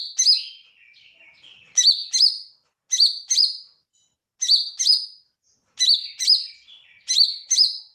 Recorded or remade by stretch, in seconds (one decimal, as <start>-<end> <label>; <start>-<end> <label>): 0.0-7.9 recorded

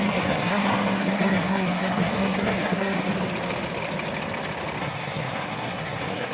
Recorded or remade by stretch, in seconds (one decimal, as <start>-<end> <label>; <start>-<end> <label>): 0.0-3.1 remade; 3.1-4.8 recorded; 4.8-6.3 remade

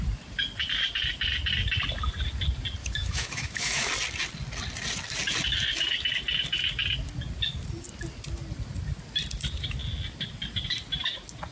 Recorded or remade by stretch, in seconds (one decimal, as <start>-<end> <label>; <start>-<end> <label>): 0.0-2.8 recorded; 2.8-3.9 remade; 3.9-11.5 recorded

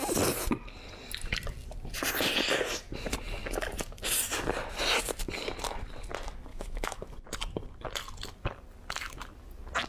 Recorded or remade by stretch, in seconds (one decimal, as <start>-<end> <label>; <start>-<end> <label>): 0.0-6.5 recorded; 6.5-7.1 remade; 7.1-9.9 recorded

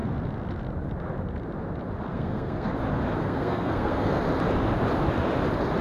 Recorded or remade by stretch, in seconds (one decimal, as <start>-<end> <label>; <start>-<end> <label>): 0.0-2.1 recorded; 2.1-2.7 remade; 2.7-3.2 recorded; 3.2-4.2 remade; 4.2-5.8 recorded

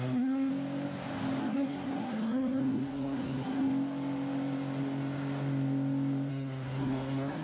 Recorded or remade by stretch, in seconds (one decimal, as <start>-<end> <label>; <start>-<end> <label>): 0.0-0.5 remade; 0.5-1.4 recorded; 1.4-3.7 remade; 3.7-6.3 recorded; 6.3-7.4 remade